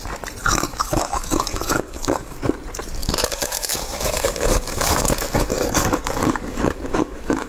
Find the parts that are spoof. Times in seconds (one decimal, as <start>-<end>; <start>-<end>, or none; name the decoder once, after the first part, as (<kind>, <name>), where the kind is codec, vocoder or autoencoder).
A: 0.4-2.4 (codec, DAC); 3.0-7.5